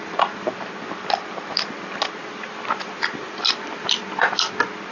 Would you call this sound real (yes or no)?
yes